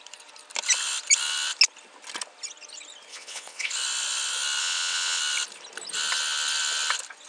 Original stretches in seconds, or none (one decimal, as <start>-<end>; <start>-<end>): 0.0-3.1; 3.7-4.6; 5.2-7.3